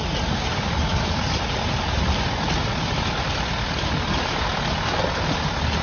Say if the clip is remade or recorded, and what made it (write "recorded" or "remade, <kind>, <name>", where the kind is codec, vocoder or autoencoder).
recorded